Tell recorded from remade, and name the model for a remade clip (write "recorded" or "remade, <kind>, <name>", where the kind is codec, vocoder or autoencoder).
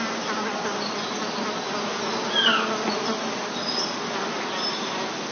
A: recorded